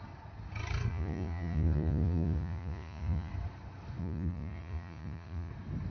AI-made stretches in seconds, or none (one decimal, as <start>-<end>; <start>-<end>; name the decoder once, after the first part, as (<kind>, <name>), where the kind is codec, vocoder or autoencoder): 0.9-3.3 (vocoder, Vocos); 4.0-5.5